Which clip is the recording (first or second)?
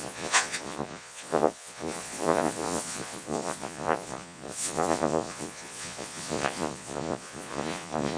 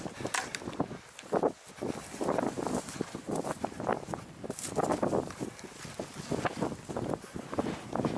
second